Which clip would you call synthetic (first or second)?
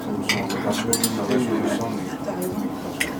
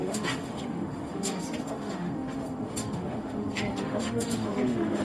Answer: second